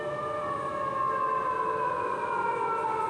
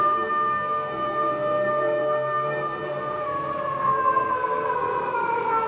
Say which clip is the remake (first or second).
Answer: second